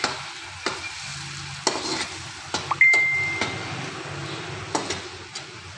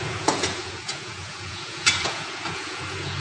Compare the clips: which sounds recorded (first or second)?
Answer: first